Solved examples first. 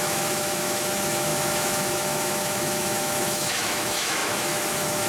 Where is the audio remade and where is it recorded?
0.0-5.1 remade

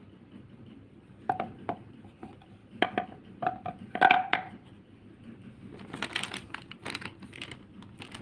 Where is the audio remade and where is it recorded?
0.0-8.2 recorded